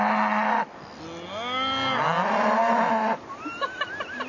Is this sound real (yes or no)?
yes